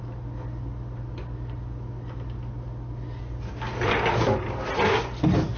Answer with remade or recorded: recorded